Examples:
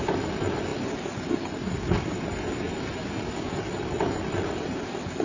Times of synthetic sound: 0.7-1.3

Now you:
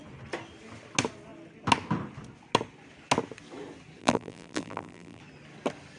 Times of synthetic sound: 4.0-5.2

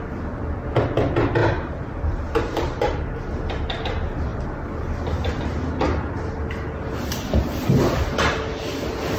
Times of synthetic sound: 1.4-3.4

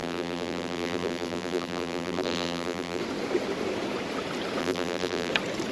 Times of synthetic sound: 0.0-3.0; 4.6-5.3

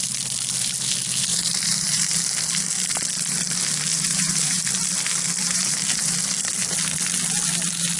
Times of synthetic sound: 1.3-2.3; 3.9-4.6; 5.4-6.1